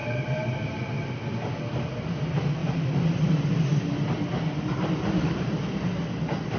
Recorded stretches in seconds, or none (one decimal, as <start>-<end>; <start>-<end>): 0.0-2.6; 3.3-6.6